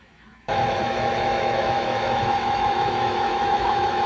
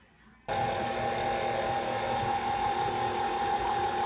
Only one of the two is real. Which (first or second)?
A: second